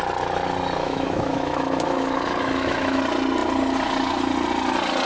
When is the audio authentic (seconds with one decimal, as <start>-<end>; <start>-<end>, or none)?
0.0-0.8; 3.0-5.1